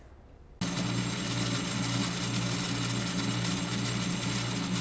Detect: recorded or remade recorded